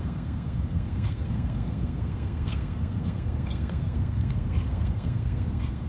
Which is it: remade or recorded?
remade